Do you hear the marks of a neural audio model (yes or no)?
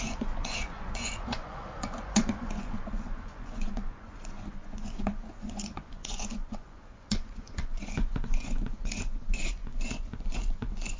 yes